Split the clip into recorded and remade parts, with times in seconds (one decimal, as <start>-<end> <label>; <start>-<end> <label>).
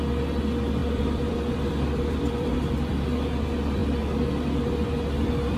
0.0-0.8 recorded; 0.8-2.5 remade; 2.5-5.6 recorded